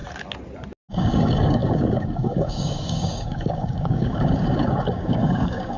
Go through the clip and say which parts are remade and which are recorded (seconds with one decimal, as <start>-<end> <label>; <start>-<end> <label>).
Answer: 0.0-0.9 recorded; 0.9-5.8 remade